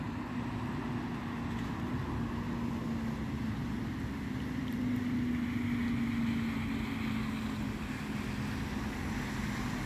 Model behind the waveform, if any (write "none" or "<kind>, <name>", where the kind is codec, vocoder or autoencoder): none